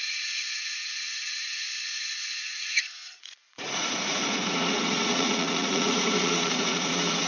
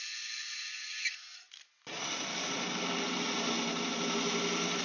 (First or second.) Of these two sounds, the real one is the second